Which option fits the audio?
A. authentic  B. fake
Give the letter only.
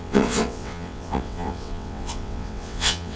B